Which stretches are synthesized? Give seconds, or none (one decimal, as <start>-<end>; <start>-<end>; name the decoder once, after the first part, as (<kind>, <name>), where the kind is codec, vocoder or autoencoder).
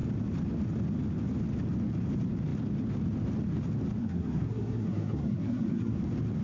4.0-6.0 (codec, SNAC)